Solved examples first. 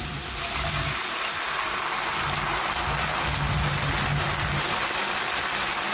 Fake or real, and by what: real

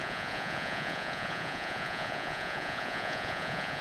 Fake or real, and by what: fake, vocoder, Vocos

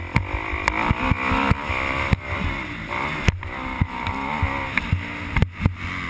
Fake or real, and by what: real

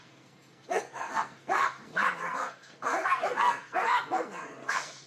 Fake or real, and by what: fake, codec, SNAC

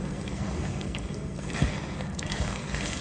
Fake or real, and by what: fake, codec, SNAC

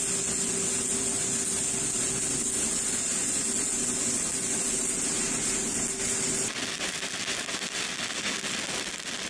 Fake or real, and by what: real